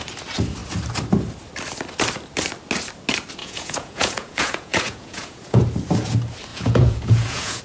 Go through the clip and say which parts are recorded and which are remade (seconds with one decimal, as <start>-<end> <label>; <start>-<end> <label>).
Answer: 0.0-3.4 recorded; 3.4-5.6 remade; 5.6-6.5 recorded; 6.5-7.6 remade